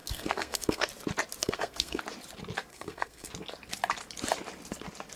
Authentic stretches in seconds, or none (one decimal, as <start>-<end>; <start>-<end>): 0.9-1.4; 2.0-2.7; 3.3-5.2